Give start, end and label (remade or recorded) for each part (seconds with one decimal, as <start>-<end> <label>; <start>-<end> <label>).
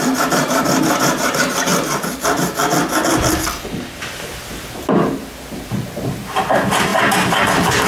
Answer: 0.0-1.7 remade; 1.7-6.0 recorded; 6.0-7.9 remade